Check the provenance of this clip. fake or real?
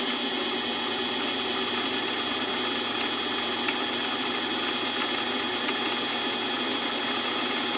real